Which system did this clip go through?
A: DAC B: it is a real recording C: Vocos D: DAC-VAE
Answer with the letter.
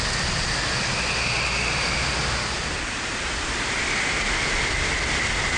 B